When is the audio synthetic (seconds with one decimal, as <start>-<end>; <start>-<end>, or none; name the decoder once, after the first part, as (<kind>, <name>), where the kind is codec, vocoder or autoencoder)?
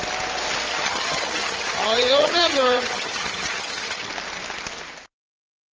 0.7-4.1 (vocoder, HiFi-GAN)